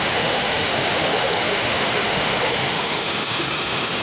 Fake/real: fake